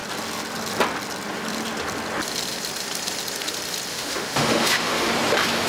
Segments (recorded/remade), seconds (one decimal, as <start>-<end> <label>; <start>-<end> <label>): 0.0-3.9 recorded; 3.9-5.1 remade; 5.1-5.7 recorded